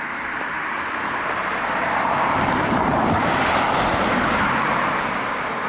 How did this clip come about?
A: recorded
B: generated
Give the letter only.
B